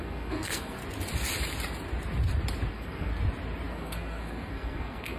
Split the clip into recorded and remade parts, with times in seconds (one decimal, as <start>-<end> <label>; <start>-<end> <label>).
0.0-0.8 remade; 0.8-2.7 recorded; 2.7-3.1 remade; 3.1-3.7 recorded; 3.7-5.2 remade